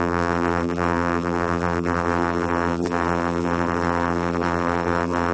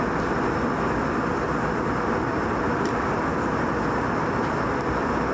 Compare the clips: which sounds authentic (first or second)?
second